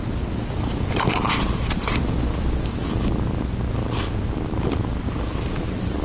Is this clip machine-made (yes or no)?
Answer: no